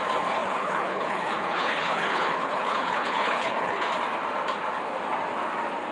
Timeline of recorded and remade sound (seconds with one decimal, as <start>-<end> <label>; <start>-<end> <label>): 0.0-0.4 recorded; 0.4-3.9 remade; 3.9-5.9 recorded